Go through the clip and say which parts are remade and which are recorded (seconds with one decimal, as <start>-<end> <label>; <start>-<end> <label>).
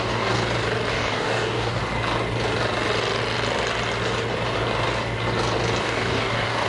0.0-0.4 remade; 0.4-0.9 recorded; 0.9-1.8 remade; 1.8-5.8 recorded; 5.8-6.7 remade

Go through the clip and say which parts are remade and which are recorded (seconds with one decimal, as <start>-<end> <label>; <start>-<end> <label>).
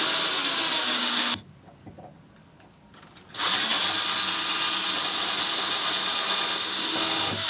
0.0-0.8 recorded; 0.8-1.4 remade; 1.4-7.5 recorded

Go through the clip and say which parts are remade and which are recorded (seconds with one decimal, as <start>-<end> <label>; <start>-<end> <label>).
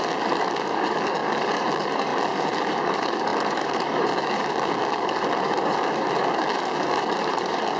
0.0-7.8 remade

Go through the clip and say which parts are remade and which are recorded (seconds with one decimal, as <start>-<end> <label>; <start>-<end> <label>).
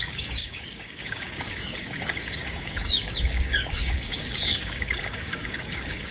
0.0-6.1 remade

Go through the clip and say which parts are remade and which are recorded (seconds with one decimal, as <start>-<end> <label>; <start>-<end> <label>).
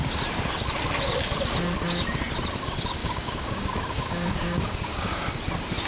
0.0-3.0 recorded; 3.0-5.4 remade; 5.4-5.9 recorded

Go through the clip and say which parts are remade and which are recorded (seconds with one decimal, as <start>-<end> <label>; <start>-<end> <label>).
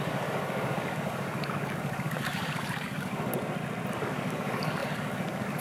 0.0-3.3 remade; 3.3-3.9 recorded; 3.9-5.6 remade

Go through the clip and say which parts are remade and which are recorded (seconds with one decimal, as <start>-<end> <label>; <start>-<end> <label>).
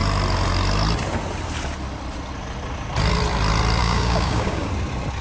0.0-3.8 recorded; 3.8-4.7 remade; 4.7-5.2 recorded